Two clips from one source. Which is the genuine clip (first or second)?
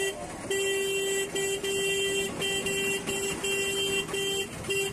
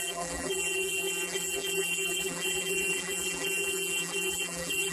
first